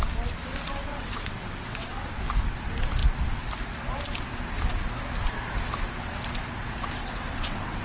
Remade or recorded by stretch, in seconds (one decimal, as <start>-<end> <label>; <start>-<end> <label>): 0.0-0.8 recorded; 0.8-2.2 remade; 2.2-7.0 recorded; 7.0-7.8 remade

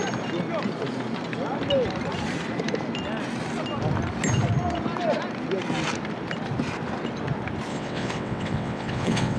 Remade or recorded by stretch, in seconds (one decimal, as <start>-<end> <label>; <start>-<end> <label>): 0.0-7.7 recorded; 7.7-9.4 remade

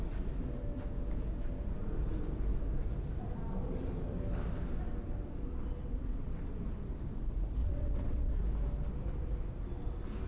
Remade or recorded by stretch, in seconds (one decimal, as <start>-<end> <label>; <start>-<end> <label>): 0.0-5.8 recorded; 5.8-6.7 remade; 6.7-7.6 recorded; 7.6-8.4 remade; 8.4-10.3 recorded